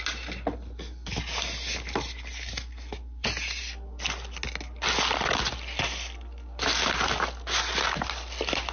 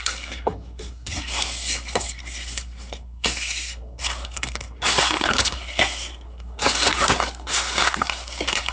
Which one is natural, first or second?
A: first